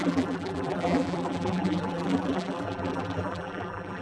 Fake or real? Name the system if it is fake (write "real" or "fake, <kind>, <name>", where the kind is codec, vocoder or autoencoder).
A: fake, vocoder, BigVGAN v2